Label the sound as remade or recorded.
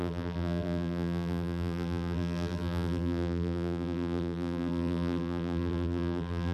remade